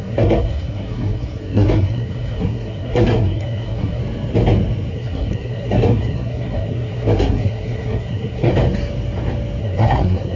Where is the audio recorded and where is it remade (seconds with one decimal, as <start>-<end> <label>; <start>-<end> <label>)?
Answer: 0.0-4.0 remade; 4.0-4.9 recorded; 4.9-8.5 remade; 8.5-9.6 recorded; 9.6-10.4 remade